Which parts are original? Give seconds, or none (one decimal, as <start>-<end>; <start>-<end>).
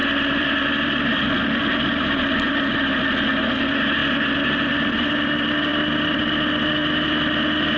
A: 3.6-5.7; 6.7-7.8